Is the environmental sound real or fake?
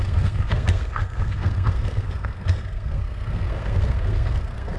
fake